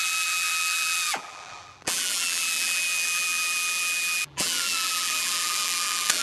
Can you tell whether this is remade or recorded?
remade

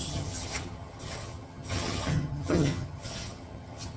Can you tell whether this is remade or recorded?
remade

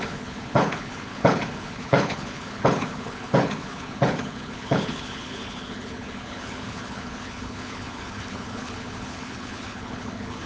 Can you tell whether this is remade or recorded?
remade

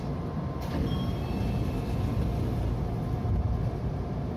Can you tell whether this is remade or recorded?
recorded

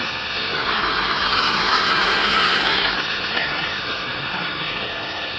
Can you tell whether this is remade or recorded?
remade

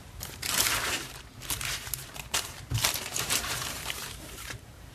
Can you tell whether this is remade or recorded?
remade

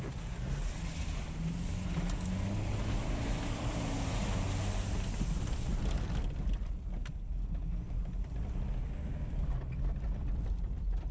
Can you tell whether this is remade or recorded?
recorded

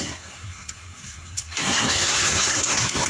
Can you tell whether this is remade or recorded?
remade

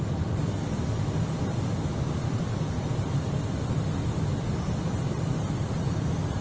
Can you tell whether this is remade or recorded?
remade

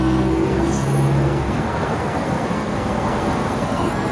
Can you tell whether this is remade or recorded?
remade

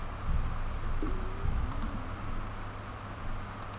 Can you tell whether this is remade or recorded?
recorded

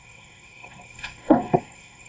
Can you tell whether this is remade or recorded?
remade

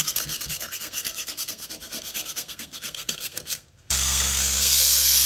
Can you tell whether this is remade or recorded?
remade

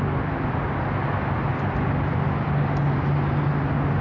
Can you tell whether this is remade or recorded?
recorded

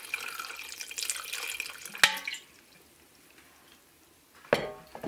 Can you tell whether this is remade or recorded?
recorded